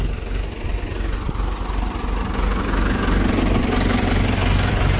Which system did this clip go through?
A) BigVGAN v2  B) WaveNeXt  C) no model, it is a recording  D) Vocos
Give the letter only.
C